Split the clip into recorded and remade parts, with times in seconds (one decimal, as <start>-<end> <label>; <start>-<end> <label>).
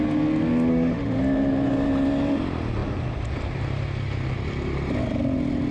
0.0-0.7 recorded; 0.7-1.2 remade; 1.2-5.7 recorded